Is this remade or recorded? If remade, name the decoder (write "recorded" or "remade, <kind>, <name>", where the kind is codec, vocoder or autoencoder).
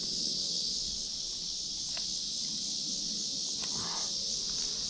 recorded